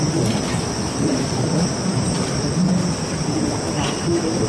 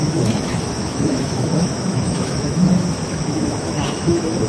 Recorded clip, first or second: first